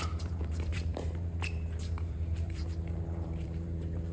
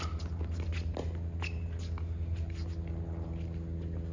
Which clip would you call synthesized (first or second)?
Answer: first